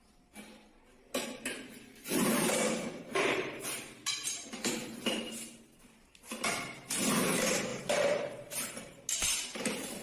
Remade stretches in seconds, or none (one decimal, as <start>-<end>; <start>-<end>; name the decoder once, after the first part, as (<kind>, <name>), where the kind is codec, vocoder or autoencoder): 2.0-5.6 (vocoder, BigVGAN v2); 7.7-8.3